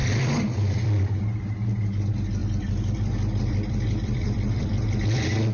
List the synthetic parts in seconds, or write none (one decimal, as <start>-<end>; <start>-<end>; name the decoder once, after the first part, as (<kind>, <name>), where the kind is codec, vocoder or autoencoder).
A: 0.0-1.1 (vocoder, BigVGAN v2); 2.4-4.8